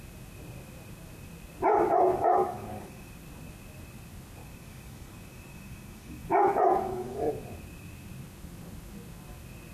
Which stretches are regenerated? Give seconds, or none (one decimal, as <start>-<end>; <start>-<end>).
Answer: 2.1-3.1; 4.4-7.3